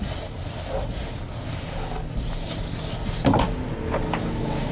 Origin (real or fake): real